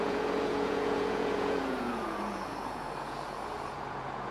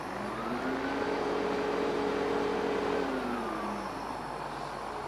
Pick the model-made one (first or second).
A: first